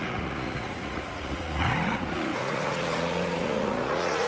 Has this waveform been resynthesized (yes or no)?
yes